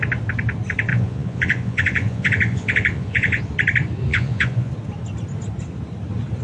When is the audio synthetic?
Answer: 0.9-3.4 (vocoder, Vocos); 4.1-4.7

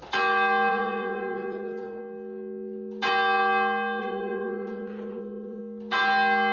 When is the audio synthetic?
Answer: 0.7-2.0 (vocoder, Vocos); 4.0-5.6

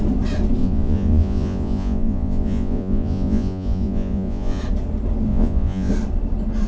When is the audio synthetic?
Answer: 0.6-4.6 (vocoder, Vocos); 5.3-5.9